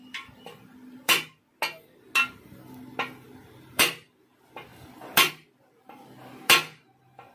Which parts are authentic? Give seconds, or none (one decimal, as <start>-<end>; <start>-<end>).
1.5-3.4; 3.9-4.7; 5.3-7.3